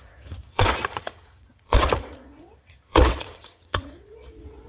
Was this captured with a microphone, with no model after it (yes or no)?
no